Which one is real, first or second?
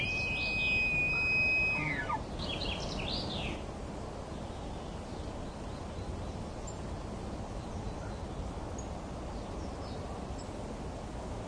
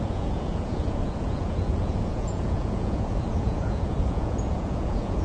first